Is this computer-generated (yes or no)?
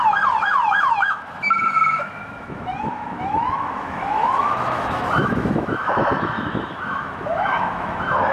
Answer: yes